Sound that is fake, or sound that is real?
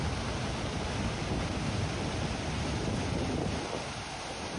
real